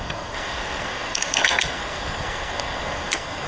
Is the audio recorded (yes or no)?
no